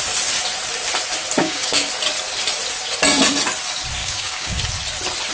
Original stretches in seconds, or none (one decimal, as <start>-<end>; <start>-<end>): 0.0-1.4; 1.9-4.0; 4.6-5.3